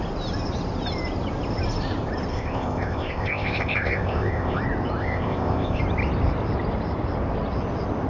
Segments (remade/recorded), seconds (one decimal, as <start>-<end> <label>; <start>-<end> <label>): 0.0-2.3 recorded; 2.3-4.6 remade; 4.6-5.0 recorded; 5.0-5.8 remade; 5.8-8.1 recorded